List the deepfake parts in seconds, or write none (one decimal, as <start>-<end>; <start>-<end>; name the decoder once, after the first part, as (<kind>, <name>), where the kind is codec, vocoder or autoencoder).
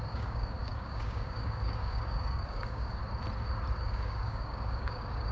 0.0-3.0 (codec, DAC); 3.8-5.3